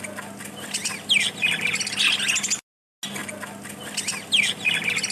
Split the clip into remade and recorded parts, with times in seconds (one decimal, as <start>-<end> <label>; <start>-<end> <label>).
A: 0.0-5.1 recorded

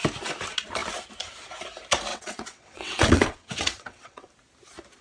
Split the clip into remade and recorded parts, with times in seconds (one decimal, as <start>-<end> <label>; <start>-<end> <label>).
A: 0.0-2.1 recorded; 2.1-4.3 remade; 4.3-5.0 recorded

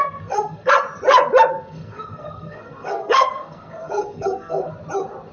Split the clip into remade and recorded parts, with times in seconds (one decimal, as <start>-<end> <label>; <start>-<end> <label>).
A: 0.0-0.7 remade; 0.7-1.5 recorded; 1.5-4.7 remade; 4.7-5.3 recorded